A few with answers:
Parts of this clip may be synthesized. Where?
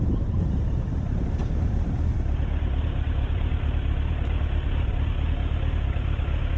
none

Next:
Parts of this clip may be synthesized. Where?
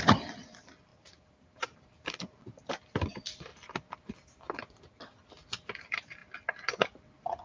0.0-3.5 (vocoder, BigVGAN v2); 5.7-6.2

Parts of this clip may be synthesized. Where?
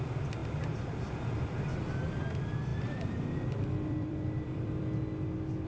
0.4-1.9 (vocoder, BigVGAN v2); 2.7-4.8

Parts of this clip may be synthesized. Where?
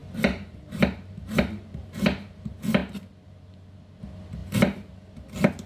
0.0-2.4 (vocoder, BigVGAN v2)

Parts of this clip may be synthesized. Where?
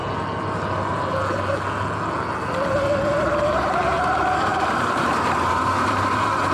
4.5-6.1 (vocoder, BigVGAN v2)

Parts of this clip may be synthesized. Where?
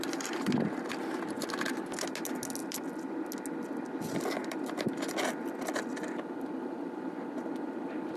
4.4-8.2 (vocoder, BigVGAN v2)